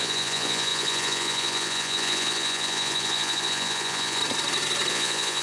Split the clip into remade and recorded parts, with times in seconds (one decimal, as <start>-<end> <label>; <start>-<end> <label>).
0.0-4.2 remade; 4.2-4.9 recorded; 4.9-5.4 remade